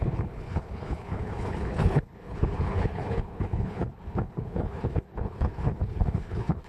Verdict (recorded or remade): remade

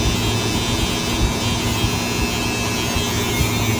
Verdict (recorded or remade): recorded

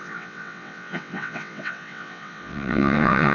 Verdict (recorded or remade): remade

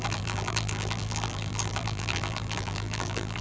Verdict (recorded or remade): remade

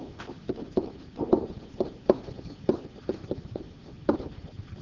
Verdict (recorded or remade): remade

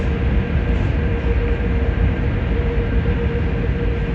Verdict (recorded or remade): recorded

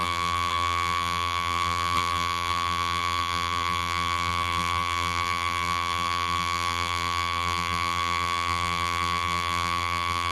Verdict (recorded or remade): remade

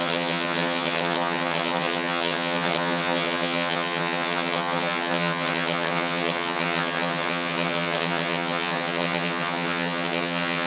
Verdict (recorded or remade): remade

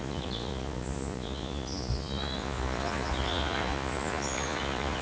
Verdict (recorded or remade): remade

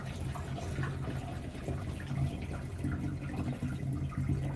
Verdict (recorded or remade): recorded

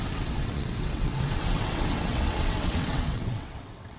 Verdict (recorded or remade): remade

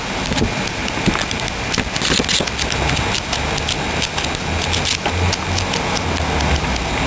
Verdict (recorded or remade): recorded